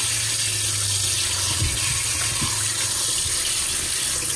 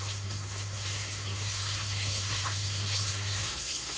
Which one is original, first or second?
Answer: first